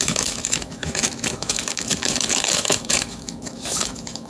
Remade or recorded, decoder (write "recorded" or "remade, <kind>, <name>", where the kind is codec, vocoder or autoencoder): remade, autoencoder, DAC-VAE